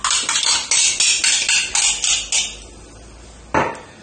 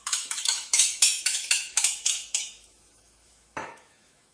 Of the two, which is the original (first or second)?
first